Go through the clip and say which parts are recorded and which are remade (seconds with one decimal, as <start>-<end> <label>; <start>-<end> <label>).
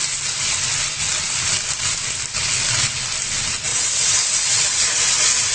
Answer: 0.0-3.7 recorded; 3.7-5.0 remade; 5.0-5.5 recorded